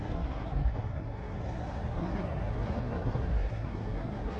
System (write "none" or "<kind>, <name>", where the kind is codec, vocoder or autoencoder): codec, SNAC